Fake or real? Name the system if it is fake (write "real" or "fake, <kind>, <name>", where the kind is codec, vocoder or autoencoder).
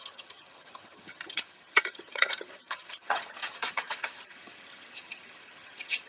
fake, vocoder, HiFi-GAN